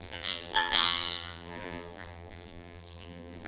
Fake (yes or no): yes